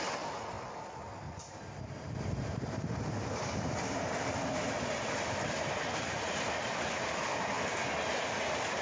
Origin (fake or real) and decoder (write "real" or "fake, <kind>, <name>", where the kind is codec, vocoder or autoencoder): real